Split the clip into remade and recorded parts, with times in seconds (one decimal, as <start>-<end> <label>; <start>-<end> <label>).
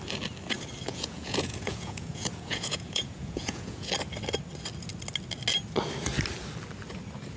0.0-0.9 recorded; 0.9-3.9 remade; 3.9-7.4 recorded